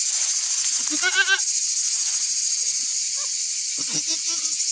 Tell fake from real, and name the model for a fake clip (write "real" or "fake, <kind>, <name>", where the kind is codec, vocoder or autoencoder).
real